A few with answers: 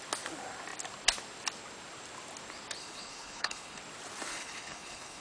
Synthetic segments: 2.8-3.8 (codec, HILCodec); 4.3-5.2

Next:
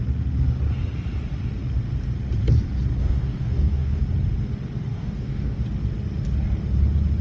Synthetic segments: 3.0-4.0 (codec, DAC); 4.9-5.6

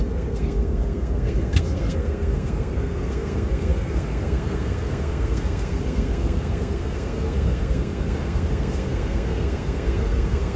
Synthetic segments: 0.0-10.6 (codec, SNAC)

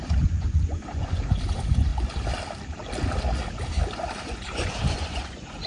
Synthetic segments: 0.0-1.9 (vocoder, Vocos); 4.2-5.7

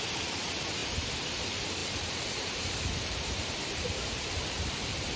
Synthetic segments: 0.0-0.8 (vocoder, BigVGAN v2); 1.4-5.2

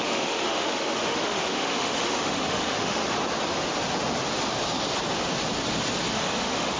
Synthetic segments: 0.0-3.0 (autoencoder, DAC-VAE); 6.1-6.8